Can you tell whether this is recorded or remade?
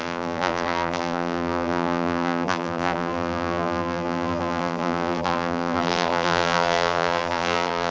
remade